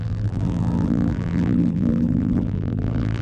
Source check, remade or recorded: remade